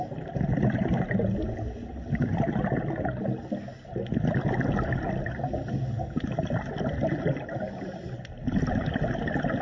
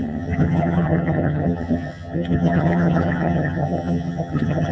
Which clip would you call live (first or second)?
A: first